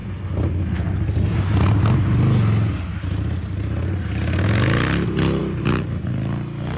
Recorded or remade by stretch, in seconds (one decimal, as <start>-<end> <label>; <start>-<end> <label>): 0.0-6.8 recorded